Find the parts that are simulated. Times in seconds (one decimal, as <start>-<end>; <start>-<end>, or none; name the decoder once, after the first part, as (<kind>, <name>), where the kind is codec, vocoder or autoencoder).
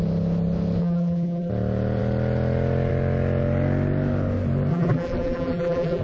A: 0.8-1.5 (vocoder, BigVGAN v2); 4.7-6.0